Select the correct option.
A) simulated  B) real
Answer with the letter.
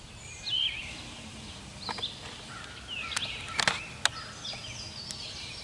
B